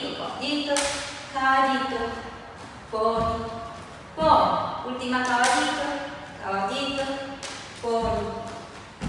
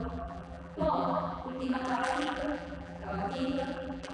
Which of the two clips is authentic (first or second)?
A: first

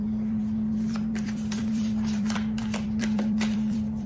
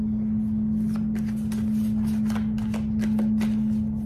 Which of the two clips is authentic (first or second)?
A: second